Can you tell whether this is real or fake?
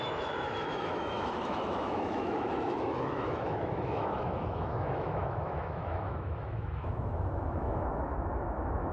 fake